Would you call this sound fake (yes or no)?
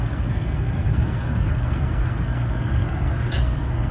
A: yes